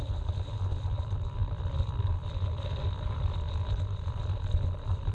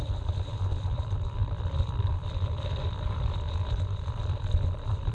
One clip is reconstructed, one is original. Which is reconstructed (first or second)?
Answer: second